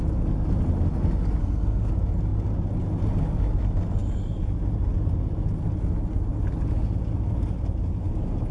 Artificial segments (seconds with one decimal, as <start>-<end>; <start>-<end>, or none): 1.4-1.9

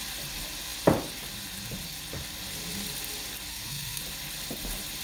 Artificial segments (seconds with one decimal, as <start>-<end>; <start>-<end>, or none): 3.5-4.0

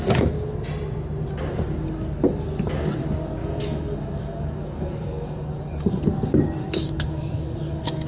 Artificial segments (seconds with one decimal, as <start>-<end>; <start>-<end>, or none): 3.4-5.9; 6.6-8.1